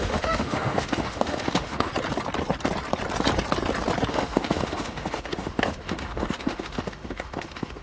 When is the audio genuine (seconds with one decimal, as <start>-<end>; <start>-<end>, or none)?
1.9-4.1